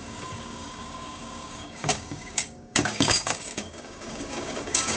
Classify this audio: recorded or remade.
remade